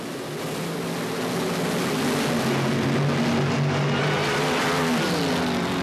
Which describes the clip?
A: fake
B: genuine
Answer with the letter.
B